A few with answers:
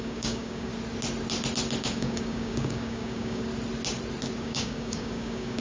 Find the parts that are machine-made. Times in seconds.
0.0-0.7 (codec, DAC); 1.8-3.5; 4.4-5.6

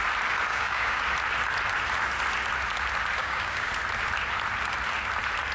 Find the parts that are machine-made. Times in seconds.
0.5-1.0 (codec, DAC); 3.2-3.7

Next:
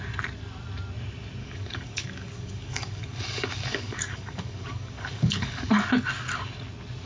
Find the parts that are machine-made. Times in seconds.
1.4-5.7 (codec, DAC)

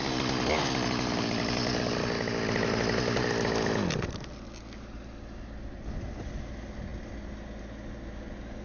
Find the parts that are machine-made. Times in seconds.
none

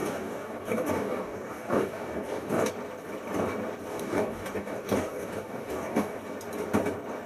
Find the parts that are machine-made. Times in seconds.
0.0-2.7 (codec, DAC); 3.9-6.2

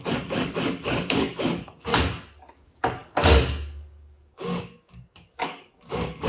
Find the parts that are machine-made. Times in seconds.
0.0-1.9 (codec, DAC); 2.5-6.3